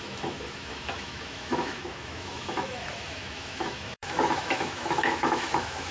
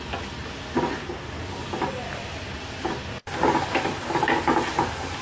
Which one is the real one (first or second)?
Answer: second